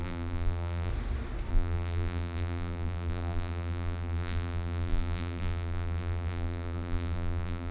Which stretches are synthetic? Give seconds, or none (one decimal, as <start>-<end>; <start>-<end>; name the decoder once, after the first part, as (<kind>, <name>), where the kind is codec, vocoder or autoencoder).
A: 0.0-0.9 (vocoder, BigVGAN v2); 1.5-7.7